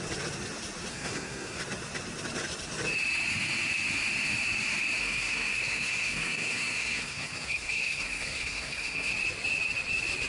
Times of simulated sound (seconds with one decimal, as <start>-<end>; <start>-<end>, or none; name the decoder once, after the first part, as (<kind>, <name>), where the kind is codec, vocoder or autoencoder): 0.9-1.6 (codec, SNAC); 5.0-9.1